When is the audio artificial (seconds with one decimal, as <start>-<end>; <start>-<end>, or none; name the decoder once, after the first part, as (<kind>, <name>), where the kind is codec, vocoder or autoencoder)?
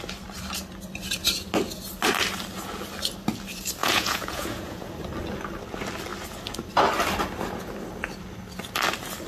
3.8-4.9 (vocoder, Vocos)